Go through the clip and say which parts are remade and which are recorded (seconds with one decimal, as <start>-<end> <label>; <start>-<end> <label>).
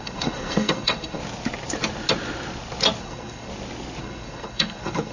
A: 0.0-1.2 remade; 1.2-3.0 recorded; 3.0-3.5 remade; 3.5-4.0 recorded; 4.0-5.1 remade